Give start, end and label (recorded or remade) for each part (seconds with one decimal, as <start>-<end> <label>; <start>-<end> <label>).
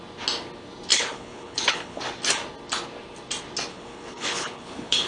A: 0.0-0.9 recorded; 0.9-2.0 remade; 2.0-3.7 recorded; 3.7-5.1 remade